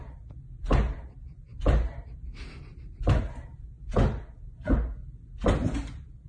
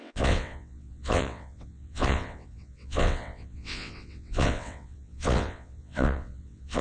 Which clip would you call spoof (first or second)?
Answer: second